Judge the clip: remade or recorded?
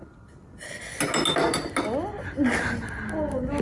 recorded